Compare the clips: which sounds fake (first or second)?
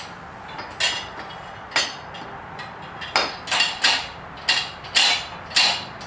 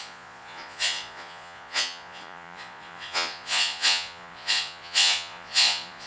second